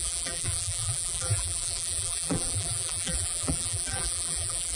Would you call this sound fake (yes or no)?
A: yes